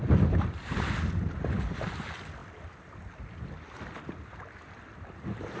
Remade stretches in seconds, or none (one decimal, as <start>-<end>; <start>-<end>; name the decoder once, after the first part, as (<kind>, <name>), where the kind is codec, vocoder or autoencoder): none